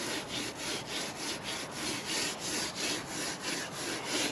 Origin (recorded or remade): recorded